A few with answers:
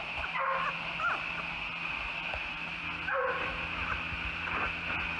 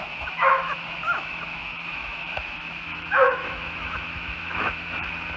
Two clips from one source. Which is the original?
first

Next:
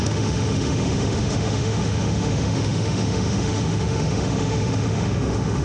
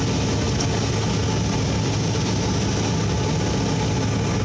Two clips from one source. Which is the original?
second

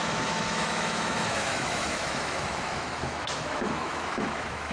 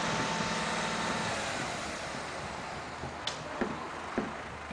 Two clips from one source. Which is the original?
second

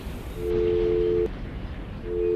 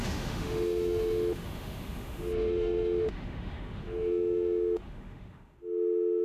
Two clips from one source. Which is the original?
first